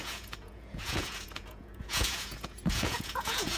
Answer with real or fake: fake